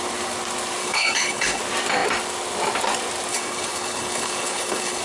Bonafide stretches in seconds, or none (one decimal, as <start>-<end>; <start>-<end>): 0.0-0.8; 1.6-3.3